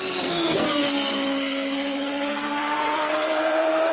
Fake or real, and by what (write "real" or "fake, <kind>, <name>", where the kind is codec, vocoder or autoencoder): fake, codec, SNAC